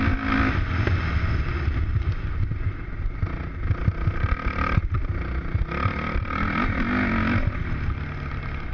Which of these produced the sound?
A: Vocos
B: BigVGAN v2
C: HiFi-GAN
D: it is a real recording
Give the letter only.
D